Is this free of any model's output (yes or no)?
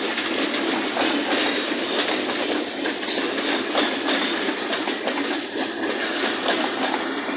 yes